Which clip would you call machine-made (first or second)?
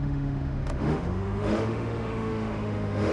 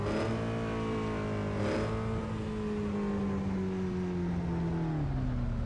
first